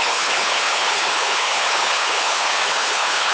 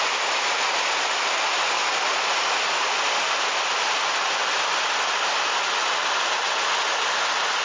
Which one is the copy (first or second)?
first